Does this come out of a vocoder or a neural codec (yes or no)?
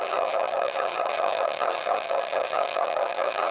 yes